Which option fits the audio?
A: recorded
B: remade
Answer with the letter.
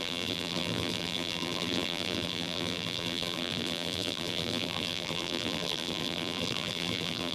B